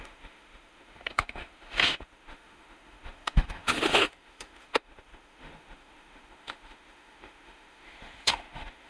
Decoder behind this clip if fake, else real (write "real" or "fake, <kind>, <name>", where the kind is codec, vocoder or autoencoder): fake, autoencoder, DAC-VAE